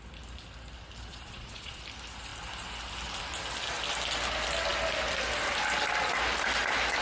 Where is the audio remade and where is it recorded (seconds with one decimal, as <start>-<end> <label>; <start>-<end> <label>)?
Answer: 0.0-1.1 recorded; 1.1-1.8 remade; 1.8-7.0 recorded